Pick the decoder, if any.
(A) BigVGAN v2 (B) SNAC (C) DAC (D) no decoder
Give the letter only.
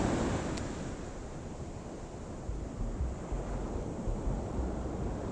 D